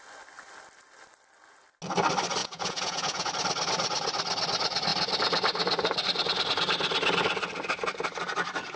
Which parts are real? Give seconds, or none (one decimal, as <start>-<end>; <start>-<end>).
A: 0.0-2.4; 3.3-8.8